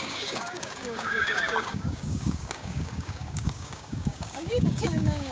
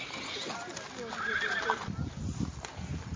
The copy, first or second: first